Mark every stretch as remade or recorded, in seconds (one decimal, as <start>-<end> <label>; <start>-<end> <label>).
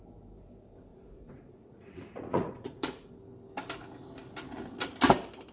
0.0-0.9 recorded; 0.9-3.1 remade; 3.1-5.5 recorded